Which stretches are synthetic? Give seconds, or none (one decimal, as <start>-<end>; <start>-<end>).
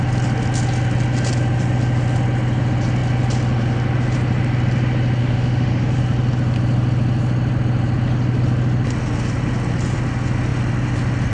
5.2-6.0